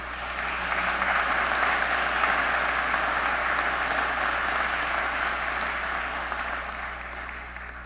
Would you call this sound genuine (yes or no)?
yes